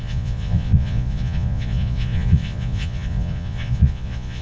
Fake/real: fake